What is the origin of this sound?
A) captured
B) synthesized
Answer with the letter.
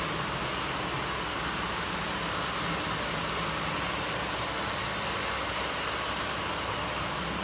A